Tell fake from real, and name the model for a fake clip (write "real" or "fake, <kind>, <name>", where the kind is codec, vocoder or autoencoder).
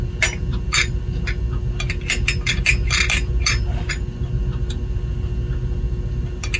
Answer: real